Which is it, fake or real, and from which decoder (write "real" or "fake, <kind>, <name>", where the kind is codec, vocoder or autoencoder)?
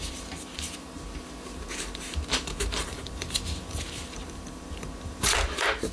fake, vocoder, BigVGAN v2